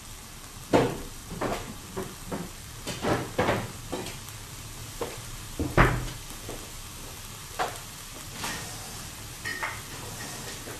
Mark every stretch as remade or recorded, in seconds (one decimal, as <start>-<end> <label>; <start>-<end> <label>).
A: 0.0-1.2 recorded; 1.2-1.8 remade; 1.8-4.8 recorded; 4.8-5.9 remade; 5.9-10.8 recorded